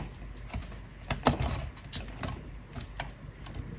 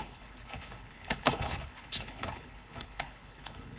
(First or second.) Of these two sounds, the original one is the first